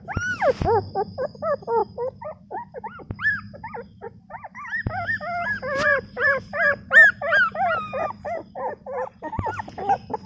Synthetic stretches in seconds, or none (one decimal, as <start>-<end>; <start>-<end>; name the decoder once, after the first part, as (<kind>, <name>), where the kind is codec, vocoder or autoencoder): 1.8-6.4 (vocoder, BigVGAN v2)